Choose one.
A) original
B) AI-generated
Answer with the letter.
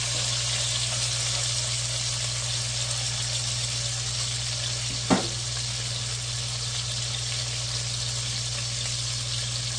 A